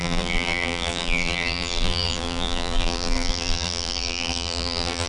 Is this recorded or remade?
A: remade